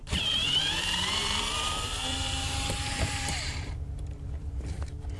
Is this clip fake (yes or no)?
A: yes